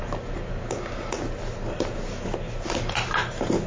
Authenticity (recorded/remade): recorded